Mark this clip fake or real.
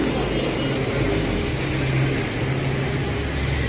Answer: real